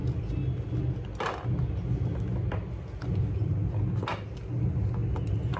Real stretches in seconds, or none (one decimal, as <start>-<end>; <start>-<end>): 0.0-5.6